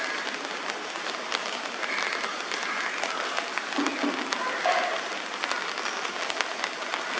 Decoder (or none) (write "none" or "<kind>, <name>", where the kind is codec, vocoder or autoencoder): none